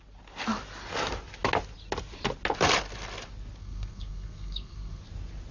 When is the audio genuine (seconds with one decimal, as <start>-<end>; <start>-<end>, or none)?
0.0-3.6; 5.0-5.5